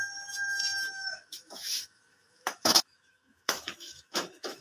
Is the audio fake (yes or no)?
yes